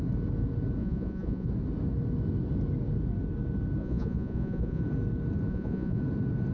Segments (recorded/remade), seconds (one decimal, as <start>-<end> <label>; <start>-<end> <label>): 0.0-0.8 recorded; 0.8-1.5 remade; 1.5-3.8 recorded; 3.8-4.8 remade; 4.8-5.5 recorded; 5.5-6.0 remade; 6.0-6.5 recorded